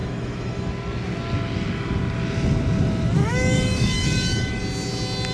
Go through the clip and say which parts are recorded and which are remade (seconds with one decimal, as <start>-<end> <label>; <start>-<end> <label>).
0.0-0.7 remade; 0.7-3.2 recorded; 3.2-4.6 remade; 4.6-5.3 recorded